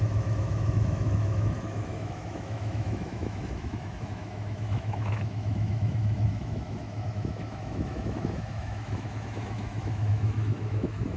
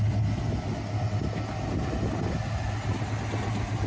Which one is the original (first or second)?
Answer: second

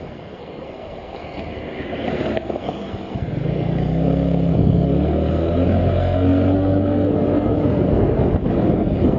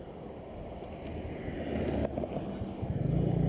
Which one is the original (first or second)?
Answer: second